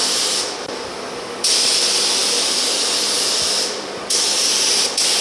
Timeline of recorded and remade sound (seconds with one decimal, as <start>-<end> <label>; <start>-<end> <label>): 0.0-5.2 recorded